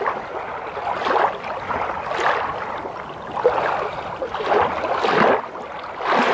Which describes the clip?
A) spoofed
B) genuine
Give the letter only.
B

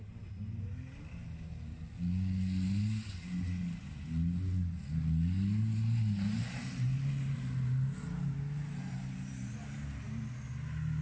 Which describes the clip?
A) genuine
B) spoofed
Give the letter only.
A